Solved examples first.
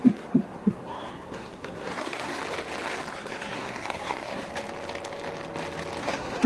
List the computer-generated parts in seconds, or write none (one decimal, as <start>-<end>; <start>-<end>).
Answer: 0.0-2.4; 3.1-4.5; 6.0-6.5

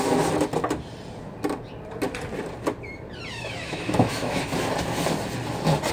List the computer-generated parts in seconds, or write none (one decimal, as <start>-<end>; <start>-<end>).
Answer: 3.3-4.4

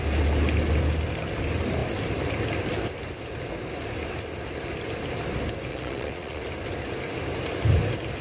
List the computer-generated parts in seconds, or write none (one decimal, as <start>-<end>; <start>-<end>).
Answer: 5.7-6.4

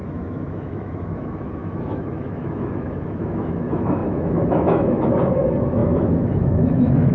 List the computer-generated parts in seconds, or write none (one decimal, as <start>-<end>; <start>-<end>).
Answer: 0.0-7.1